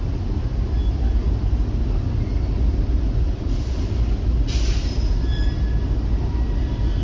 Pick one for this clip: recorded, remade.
recorded